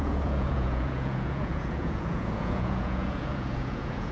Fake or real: fake